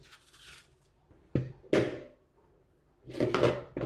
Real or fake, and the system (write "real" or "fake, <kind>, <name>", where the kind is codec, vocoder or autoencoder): real